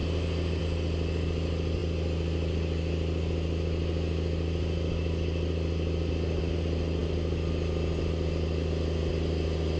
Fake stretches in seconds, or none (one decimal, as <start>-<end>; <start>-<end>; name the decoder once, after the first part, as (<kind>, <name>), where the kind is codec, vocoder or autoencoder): none